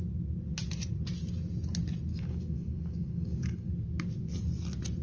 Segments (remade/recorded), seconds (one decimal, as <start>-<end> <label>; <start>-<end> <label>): 0.0-2.1 recorded; 2.1-3.7 remade; 3.7-5.0 recorded